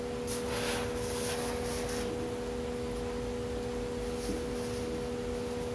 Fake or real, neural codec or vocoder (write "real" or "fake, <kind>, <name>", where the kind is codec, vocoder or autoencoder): real